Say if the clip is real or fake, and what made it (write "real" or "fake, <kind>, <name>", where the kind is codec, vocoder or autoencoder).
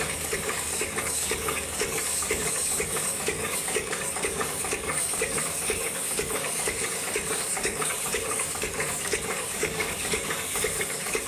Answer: fake, codec, DAC